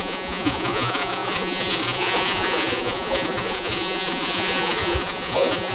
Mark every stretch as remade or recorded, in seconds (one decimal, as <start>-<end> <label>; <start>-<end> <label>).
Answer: 0.0-5.7 remade